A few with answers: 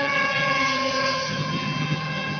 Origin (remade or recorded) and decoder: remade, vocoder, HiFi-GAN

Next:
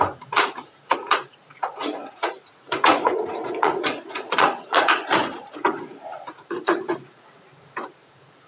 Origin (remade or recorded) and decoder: remade, vocoder, Vocos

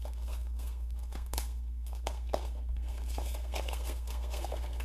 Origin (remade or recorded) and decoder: remade, codec, SNAC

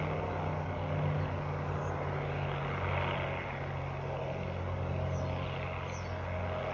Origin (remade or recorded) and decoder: recorded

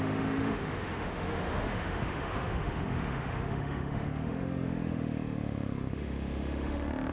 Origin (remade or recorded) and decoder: remade, autoencoder, DAC-VAE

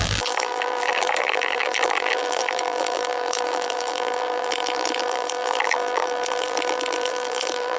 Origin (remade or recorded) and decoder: remade, vocoder, BigVGAN v2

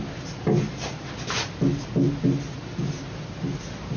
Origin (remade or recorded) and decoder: recorded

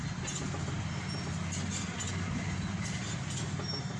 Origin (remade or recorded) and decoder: recorded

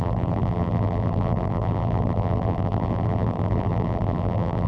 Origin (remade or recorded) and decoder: remade, vocoder, BigVGAN v2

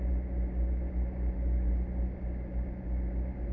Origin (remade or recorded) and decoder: recorded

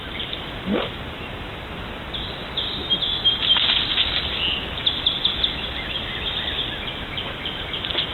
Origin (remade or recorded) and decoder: recorded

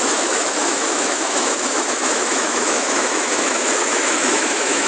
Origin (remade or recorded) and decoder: remade, autoencoder, DAC-VAE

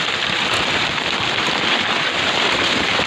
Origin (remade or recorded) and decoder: recorded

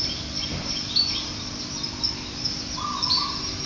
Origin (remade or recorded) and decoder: recorded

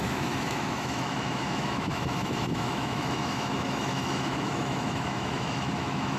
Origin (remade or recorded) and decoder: remade, autoencoder, DAC-VAE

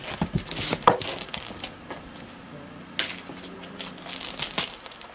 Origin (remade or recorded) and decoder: recorded